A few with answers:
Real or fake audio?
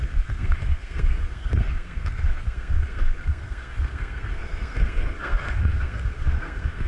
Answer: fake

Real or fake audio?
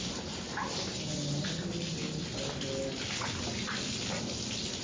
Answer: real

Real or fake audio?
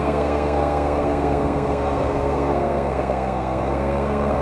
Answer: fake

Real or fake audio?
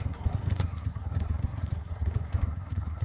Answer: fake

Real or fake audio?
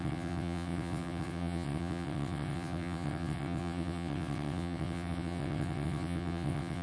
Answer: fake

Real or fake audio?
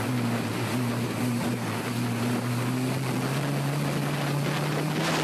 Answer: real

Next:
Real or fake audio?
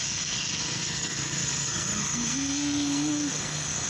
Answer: fake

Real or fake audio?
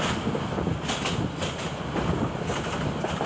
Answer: real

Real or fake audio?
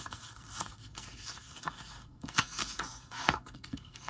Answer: fake